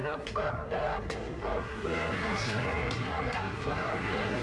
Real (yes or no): no